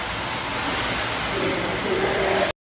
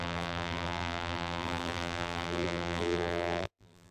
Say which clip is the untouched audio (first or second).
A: first